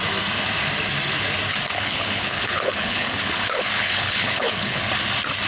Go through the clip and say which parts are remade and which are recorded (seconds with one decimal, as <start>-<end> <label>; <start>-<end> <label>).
0.0-1.5 recorded; 1.5-4.8 remade; 4.8-5.5 recorded